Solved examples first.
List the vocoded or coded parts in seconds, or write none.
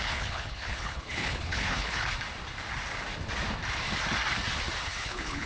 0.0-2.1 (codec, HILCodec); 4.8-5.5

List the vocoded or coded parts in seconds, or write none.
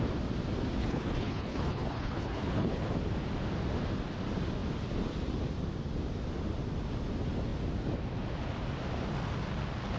0.8-2.9 (codec, HILCodec)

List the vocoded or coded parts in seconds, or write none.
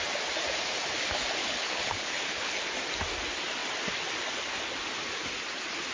1.4-2.6 (codec, HILCodec)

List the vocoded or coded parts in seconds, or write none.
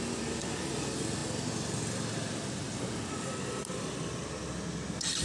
none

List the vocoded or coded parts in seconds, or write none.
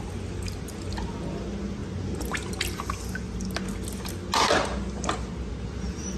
none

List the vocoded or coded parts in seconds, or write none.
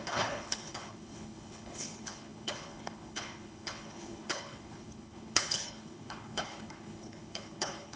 0.0-8.0 (codec, HILCodec)